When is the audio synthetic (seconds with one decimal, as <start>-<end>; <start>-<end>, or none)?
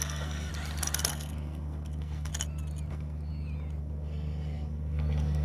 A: 0.0-0.5; 1.1-2.3; 2.9-3.3; 3.8-5.4